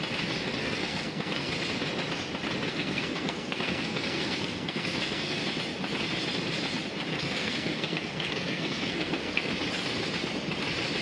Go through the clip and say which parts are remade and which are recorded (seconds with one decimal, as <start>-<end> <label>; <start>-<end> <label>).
0.0-0.6 recorded; 0.6-1.5 remade; 1.5-2.7 recorded; 2.7-5.4 remade; 5.4-7.1 recorded; 7.1-9.5 remade; 9.5-11.0 recorded